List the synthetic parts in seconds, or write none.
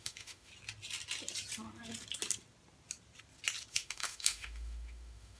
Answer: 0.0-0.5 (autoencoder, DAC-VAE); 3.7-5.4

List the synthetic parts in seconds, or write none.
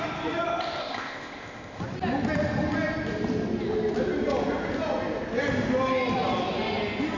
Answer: 0.8-1.8 (codec, ZipCodec)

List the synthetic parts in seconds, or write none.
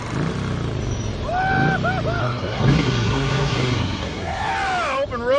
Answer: 2.2-4.5 (codec, SNAC)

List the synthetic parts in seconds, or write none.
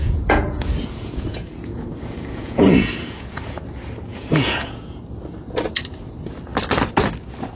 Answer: 0.0-3.4 (vocoder, Vocos); 4.1-5.0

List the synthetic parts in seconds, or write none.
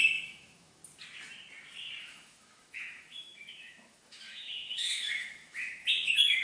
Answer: 0.0-0.8 (autoencoder, DAC-VAE); 2.0-6.4